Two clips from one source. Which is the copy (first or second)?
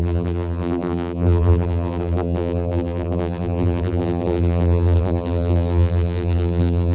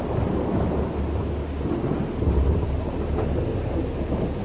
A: first